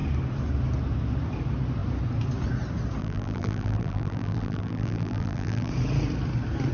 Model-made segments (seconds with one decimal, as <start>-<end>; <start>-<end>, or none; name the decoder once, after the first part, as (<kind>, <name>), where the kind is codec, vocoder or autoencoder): 3.0-5.7 (vocoder, BigVGAN v2)